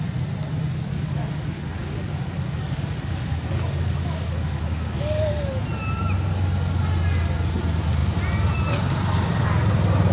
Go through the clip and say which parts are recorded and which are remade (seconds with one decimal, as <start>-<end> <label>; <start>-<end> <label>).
0.0-0.9 recorded; 0.9-5.3 remade; 5.3-10.1 recorded